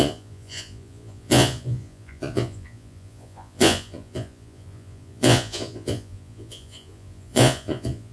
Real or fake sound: fake